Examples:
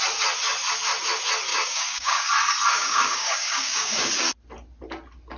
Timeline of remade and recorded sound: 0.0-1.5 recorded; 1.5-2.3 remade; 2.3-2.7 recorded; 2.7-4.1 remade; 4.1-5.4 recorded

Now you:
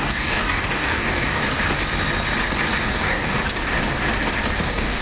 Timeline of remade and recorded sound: 0.0-1.4 remade; 1.4-3.0 recorded; 3.0-3.4 remade; 3.4-4.6 recorded; 4.6-5.0 remade

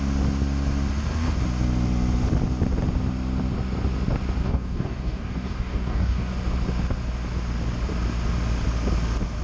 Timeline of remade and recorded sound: 0.0-4.4 recorded; 4.4-6.3 remade; 6.3-9.4 recorded

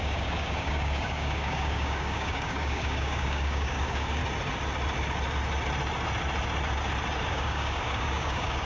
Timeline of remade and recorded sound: 0.0-4.2 remade; 4.2-7.3 recorded; 7.3-8.6 remade

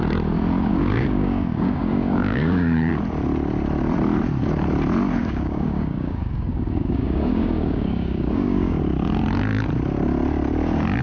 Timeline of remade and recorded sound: 0.0-0.7 recorded; 0.7-2.9 remade; 2.9-5.2 recorded; 5.2-8.8 remade; 8.8-11.0 recorded

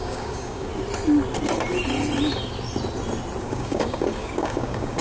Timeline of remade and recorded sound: 0.0-0.7 remade; 0.7-3.4 recorded; 3.4-5.0 remade

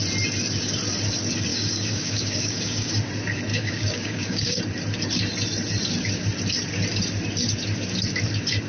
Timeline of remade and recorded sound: 0.0-1.5 recorded; 1.5-2.9 remade; 2.9-3.5 recorded; 3.5-4.6 remade; 4.6-8.7 recorded